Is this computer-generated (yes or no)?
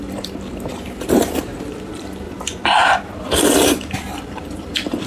yes